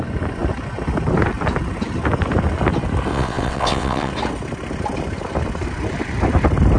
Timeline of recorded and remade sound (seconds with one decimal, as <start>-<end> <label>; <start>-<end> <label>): 0.0-3.1 recorded; 3.1-4.1 remade; 4.1-6.8 recorded